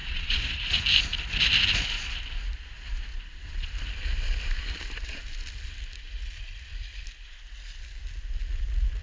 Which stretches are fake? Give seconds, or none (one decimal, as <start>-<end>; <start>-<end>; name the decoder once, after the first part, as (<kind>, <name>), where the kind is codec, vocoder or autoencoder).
0.0-0.6 (vocoder, Vocos); 3.1-3.7